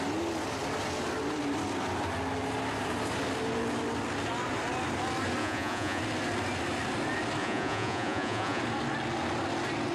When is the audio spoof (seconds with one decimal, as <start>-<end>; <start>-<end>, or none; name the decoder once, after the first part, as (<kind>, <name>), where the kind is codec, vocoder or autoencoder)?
5.4-6.0 (vocoder, Vocos); 7.4-8.6